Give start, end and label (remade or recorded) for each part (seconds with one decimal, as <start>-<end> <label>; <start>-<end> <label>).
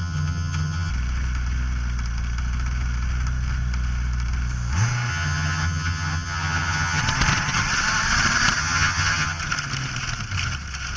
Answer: 0.0-0.9 remade; 0.9-5.1 recorded; 5.1-7.0 remade; 7.0-8.6 recorded; 8.6-9.4 remade; 9.4-11.0 recorded